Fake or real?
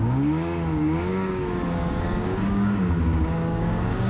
fake